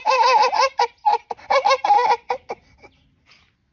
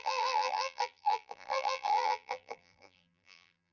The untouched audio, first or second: first